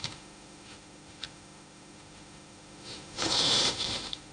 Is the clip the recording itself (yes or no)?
no